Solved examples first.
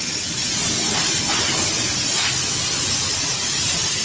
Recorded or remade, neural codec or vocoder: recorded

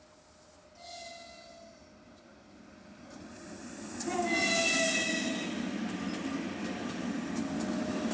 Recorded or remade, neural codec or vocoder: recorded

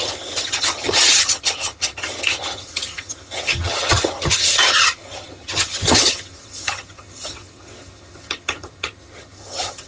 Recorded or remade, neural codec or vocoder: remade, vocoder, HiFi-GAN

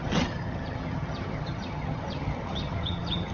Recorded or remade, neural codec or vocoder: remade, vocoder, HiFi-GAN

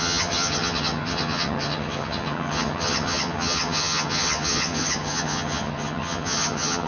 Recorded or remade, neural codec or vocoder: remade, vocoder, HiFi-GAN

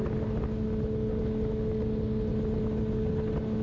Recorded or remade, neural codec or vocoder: recorded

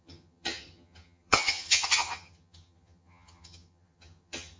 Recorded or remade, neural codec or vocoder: remade, vocoder, HiFi-GAN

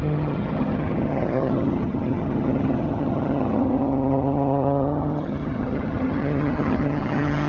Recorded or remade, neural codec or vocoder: remade, vocoder, HiFi-GAN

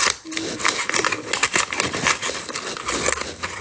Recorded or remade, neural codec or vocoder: recorded